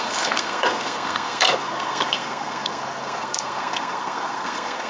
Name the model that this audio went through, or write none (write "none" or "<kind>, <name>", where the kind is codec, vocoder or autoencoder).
codec, SNAC